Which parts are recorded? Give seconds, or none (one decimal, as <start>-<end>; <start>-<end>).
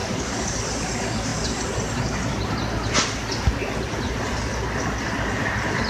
0.6-5.9